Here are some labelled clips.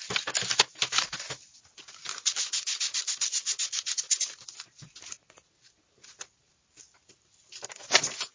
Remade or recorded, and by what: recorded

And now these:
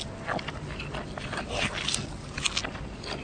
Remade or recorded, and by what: recorded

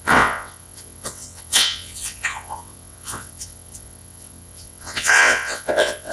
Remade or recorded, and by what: remade, vocoder, WaveNeXt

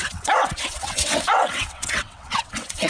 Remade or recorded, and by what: remade, vocoder, WaveNeXt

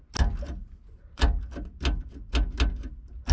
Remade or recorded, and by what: recorded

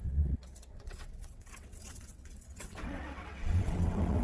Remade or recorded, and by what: remade, vocoder, WaveNeXt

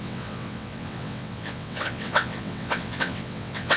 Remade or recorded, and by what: remade, vocoder, WaveNeXt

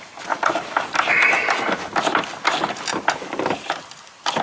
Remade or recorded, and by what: recorded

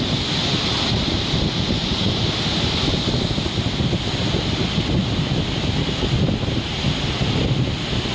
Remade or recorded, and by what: recorded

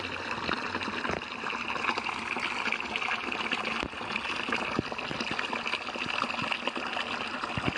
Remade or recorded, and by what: recorded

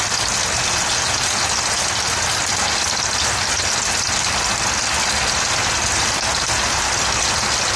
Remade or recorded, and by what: recorded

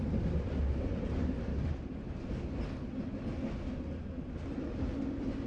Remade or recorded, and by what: recorded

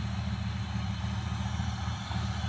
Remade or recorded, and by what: recorded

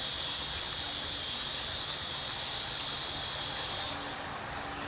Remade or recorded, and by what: recorded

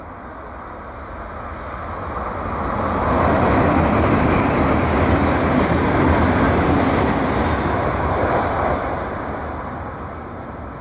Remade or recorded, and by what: recorded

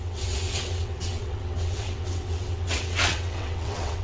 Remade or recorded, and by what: remade, vocoder, WaveNeXt